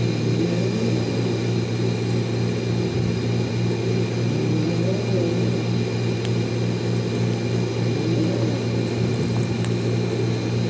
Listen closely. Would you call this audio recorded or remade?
recorded